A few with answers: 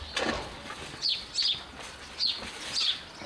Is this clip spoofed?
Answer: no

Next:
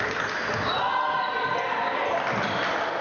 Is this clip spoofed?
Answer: no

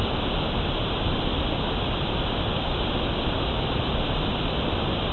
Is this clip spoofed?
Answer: no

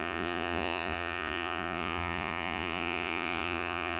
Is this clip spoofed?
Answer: yes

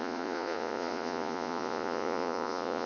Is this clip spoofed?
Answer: yes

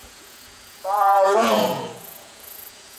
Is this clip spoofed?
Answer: yes